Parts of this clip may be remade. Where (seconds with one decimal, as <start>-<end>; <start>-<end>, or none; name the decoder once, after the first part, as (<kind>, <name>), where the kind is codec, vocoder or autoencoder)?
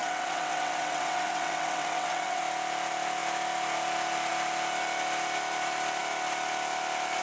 0.0-2.4 (vocoder, WaveNeXt)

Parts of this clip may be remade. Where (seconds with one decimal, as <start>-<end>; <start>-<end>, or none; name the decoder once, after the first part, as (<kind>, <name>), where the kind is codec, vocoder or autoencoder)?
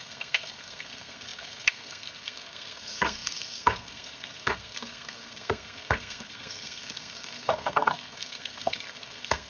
0.0-9.5 (codec, SNAC)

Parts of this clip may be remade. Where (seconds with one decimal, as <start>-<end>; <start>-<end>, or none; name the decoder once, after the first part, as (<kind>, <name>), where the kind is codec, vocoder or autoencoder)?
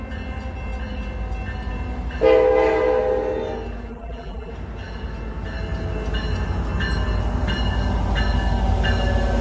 3.9-4.5 (vocoder, BigVGAN v2)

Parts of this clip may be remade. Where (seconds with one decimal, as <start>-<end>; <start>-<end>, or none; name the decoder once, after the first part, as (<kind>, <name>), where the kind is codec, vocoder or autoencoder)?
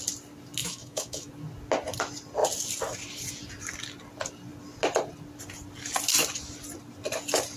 0.6-1.3 (autoencoder, DAC-VAE)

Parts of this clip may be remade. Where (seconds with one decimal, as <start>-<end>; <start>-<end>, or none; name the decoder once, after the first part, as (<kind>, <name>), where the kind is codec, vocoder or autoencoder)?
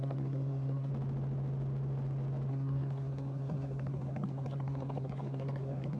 0.0-0.9 (codec, SNAC); 2.5-6.0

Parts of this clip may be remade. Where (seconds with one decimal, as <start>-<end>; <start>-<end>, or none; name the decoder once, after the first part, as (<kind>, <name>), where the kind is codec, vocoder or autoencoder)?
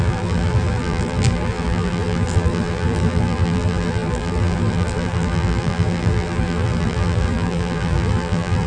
0.0-8.7 (vocoder, BigVGAN v2)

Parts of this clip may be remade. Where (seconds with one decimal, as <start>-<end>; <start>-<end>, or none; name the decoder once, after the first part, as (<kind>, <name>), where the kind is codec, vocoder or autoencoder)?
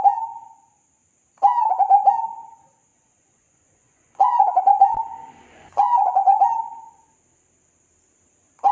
2.9-6.4 (vocoder, Vocos)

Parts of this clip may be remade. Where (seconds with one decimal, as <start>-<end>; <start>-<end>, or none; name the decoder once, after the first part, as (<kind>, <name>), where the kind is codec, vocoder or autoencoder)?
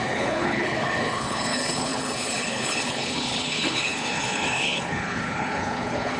0.0-6.2 (codec, HILCodec)